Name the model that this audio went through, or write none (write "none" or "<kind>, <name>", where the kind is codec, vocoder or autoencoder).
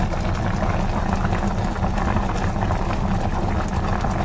none